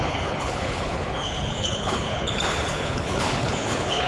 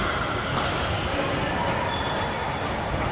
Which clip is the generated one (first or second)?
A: first